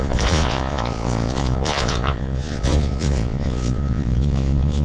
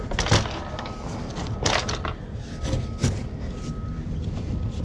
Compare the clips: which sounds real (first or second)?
second